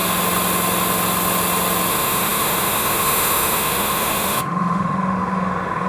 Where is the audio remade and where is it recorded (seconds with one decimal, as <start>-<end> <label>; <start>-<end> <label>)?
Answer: 0.0-1.9 recorded; 1.9-5.9 remade